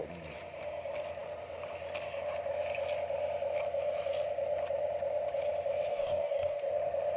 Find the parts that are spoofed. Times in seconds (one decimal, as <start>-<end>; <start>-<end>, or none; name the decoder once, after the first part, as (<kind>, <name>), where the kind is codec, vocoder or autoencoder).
5.9-6.7 (codec, DAC)